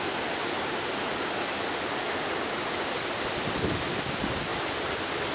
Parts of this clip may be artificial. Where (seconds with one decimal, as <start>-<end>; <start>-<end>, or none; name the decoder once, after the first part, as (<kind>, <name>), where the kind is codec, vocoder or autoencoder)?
none